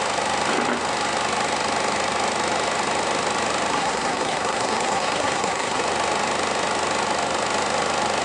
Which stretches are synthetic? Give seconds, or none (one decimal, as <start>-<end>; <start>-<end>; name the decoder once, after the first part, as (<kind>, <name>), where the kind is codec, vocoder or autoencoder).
3.7-5.8 (codec, SNAC)

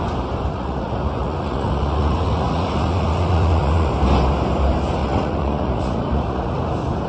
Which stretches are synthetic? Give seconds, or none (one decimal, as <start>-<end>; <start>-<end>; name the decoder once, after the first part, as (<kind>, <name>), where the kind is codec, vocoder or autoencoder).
0.5-3.9 (vocoder, Vocos); 5.0-6.6

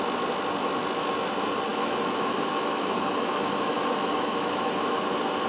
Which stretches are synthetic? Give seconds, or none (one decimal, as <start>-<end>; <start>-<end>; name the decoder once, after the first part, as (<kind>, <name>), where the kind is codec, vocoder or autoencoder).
1.7-5.0 (autoencoder, DAC-VAE)